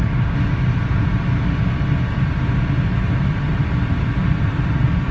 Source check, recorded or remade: recorded